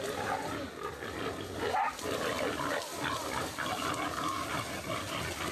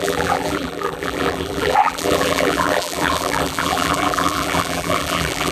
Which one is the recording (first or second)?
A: first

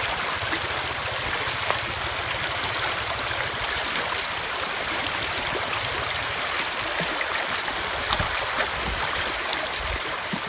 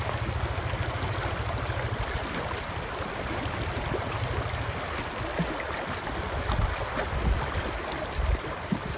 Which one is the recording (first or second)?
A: second